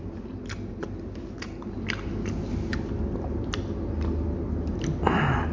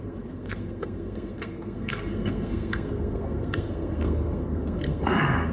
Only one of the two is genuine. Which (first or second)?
first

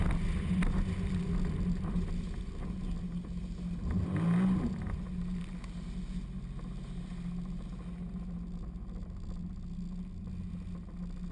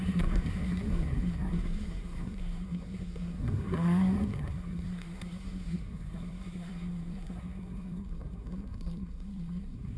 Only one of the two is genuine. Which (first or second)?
first